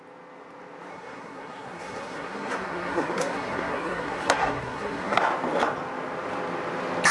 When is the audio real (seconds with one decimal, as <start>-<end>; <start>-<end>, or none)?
0.0-0.9; 5.2-7.1